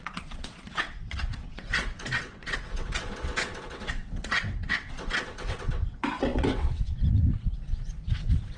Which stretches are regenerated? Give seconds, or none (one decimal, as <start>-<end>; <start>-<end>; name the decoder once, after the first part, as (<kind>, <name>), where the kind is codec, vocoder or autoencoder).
0.0-8.6 (vocoder, WaveNeXt)